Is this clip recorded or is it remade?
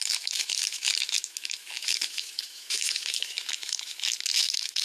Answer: remade